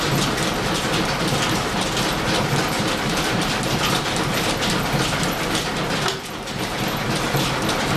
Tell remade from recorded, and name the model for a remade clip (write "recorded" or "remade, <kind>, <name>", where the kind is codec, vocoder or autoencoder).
recorded